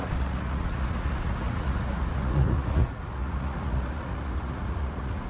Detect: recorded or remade remade